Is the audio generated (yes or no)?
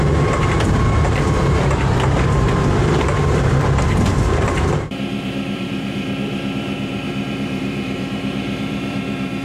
yes